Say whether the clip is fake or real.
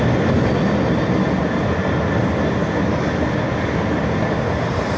real